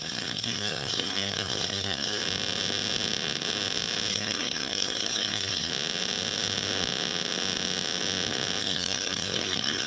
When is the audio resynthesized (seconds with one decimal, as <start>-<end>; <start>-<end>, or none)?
0.0-2.2; 4.1-5.7; 8.6-9.9